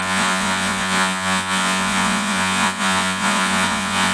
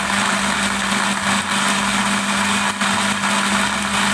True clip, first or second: second